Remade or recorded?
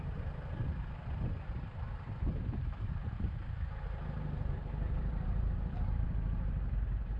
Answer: remade